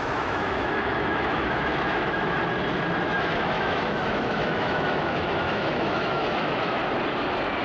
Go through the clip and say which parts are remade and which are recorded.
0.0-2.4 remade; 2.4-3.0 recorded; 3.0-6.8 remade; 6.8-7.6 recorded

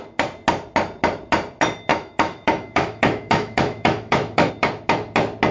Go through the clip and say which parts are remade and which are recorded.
0.0-1.9 recorded; 1.9-4.5 remade; 4.5-5.5 recorded

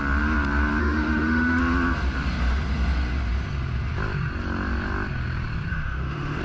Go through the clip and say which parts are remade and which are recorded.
0.0-0.8 recorded; 0.8-1.6 remade; 1.6-5.7 recorded; 5.7-6.4 remade

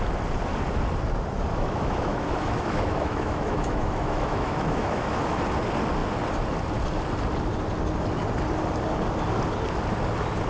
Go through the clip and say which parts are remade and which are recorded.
0.0-1.5 recorded; 1.5-5.4 remade; 5.4-10.5 recorded

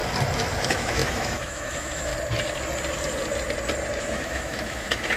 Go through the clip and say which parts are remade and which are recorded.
0.0-0.6 recorded; 0.6-2.1 remade; 2.1-4.0 recorded; 4.0-5.2 remade

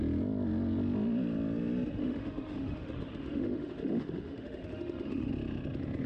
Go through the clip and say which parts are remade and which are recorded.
0.0-2.0 recorded; 2.0-5.3 remade; 5.3-6.1 recorded